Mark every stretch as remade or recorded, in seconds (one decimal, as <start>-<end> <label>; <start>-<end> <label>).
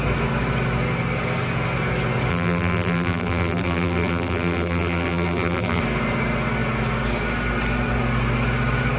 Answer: 0.0-2.3 recorded; 2.3-5.8 remade; 5.8-9.0 recorded